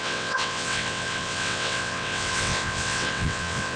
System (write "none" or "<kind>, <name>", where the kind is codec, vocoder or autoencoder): vocoder, WaveNeXt